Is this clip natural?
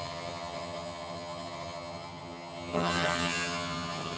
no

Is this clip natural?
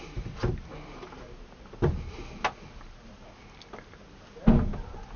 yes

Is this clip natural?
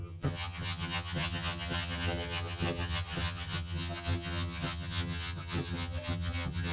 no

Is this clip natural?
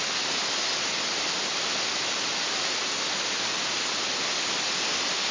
yes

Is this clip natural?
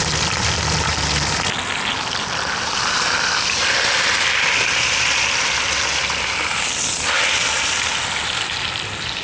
yes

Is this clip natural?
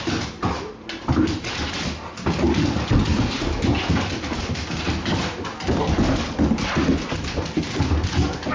yes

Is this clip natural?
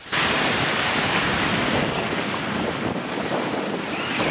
yes